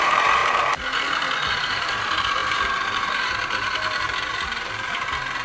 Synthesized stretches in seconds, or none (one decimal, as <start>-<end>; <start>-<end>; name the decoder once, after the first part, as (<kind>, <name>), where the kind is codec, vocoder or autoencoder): 0.0-0.4 (vocoder, BigVGAN v2); 1.5-5.4